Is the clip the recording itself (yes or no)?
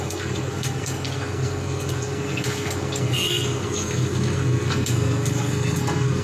no